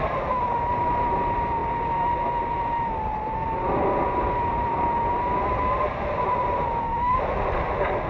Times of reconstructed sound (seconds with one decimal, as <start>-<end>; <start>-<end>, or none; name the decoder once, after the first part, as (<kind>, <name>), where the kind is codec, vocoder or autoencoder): none